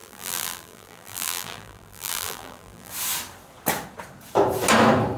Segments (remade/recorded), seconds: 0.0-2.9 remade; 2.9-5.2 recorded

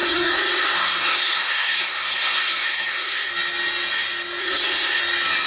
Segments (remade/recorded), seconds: 0.0-3.3 remade; 3.3-4.4 recorded; 4.4-5.0 remade; 5.0-5.5 recorded